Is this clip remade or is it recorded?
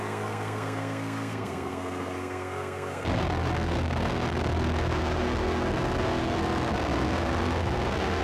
remade